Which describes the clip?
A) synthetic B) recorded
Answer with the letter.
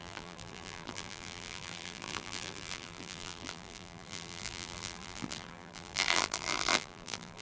A